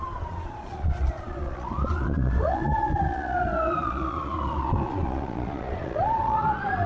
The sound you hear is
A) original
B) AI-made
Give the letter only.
B